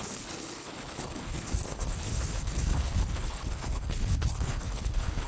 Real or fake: fake